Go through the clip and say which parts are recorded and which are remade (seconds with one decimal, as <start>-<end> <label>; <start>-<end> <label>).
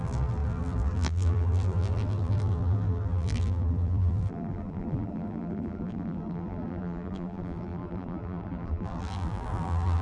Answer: 0.0-10.0 remade